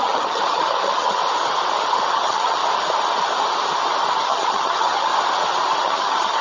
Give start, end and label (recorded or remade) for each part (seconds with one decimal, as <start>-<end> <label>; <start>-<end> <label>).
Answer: 0.0-1.2 remade; 1.2-2.1 recorded; 2.1-2.6 remade; 2.6-4.1 recorded; 4.1-5.1 remade; 5.1-5.7 recorded; 5.7-6.4 remade